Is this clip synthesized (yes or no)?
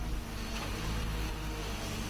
no